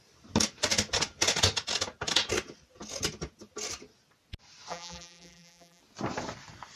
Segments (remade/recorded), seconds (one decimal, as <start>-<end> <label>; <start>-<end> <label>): 0.0-4.7 recorded; 4.7-5.8 remade; 5.8-6.8 recorded